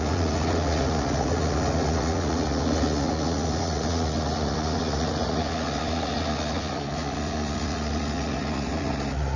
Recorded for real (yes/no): no